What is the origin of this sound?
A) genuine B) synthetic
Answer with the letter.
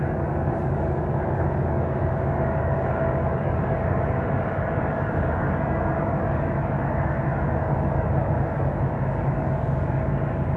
B